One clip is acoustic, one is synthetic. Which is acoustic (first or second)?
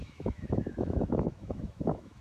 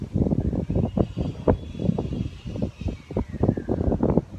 second